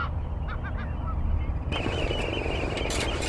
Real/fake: real